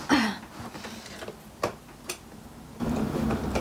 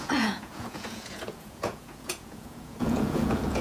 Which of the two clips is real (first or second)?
first